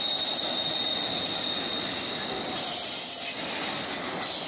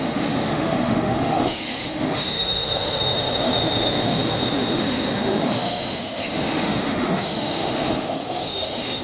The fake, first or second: second